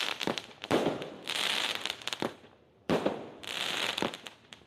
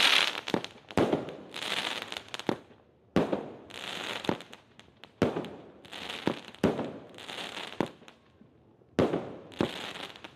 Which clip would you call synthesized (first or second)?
first